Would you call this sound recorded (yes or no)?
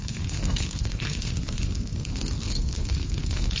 no